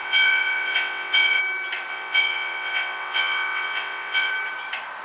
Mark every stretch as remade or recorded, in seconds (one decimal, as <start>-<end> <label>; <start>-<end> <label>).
0.0-1.4 remade; 1.4-1.9 recorded; 1.9-4.3 remade; 4.3-5.0 recorded